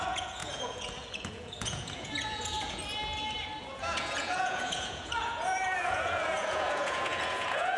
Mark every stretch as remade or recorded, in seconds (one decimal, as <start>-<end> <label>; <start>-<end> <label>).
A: 0.0-2.8 remade; 2.8-3.6 recorded; 3.6-7.8 remade